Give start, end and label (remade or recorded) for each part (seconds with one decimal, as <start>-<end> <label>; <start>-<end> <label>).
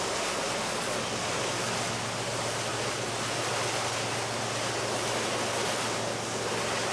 0.0-6.9 recorded